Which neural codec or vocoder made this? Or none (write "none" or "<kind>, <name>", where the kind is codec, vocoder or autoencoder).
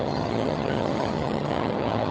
vocoder, HiFi-GAN